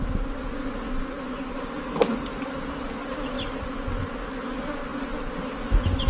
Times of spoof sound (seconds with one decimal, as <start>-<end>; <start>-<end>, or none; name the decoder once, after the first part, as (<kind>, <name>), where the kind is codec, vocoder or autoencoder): 2.0-4.0 (vocoder, BigVGAN v2)